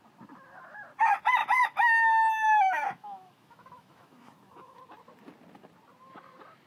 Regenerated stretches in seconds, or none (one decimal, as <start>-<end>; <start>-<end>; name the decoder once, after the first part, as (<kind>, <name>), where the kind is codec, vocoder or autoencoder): 1.4-4.8 (autoencoder, DAC-VAE)